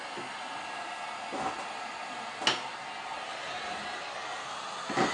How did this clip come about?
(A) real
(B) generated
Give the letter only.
A